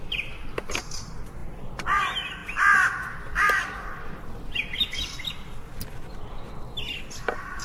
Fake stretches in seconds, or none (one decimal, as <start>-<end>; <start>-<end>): none